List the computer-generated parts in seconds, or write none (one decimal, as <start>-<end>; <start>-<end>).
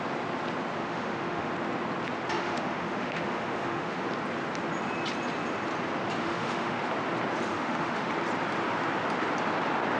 0.8-1.5; 2.4-4.1; 6.2-6.8; 7.5-8.1